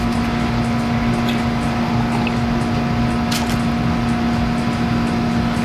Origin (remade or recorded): recorded